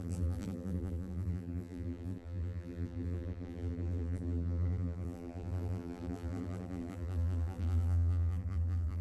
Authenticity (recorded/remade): remade